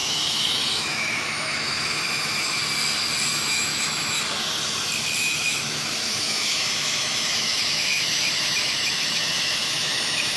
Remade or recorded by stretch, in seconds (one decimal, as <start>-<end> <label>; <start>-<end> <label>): 0.0-2.6 remade; 2.6-3.3 recorded; 3.3-4.2 remade; 4.2-5.2 recorded; 5.2-10.4 remade